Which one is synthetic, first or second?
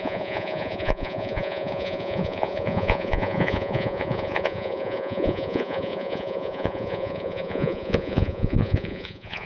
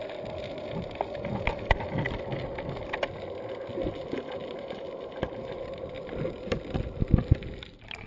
first